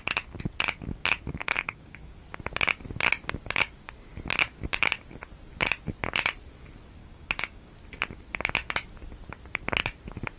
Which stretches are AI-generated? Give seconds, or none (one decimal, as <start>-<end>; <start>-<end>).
1.4-2.2; 7.0-7.7